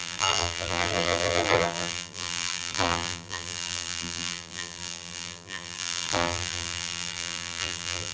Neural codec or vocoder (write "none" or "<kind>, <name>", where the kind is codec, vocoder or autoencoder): vocoder, BigVGAN v2